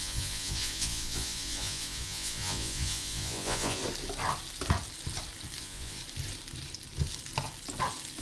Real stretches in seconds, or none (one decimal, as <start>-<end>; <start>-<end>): 3.8-5.6; 6.0-8.2